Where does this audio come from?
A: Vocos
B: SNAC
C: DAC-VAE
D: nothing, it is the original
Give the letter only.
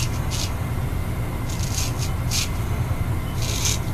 D